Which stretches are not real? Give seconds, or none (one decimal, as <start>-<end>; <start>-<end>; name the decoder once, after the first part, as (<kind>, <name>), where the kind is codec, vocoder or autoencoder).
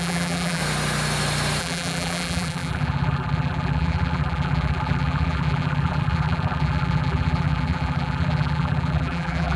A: 0.0-0.6 (vocoder, BigVGAN v2); 1.6-9.6